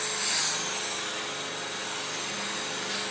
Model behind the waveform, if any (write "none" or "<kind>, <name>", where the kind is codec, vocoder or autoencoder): none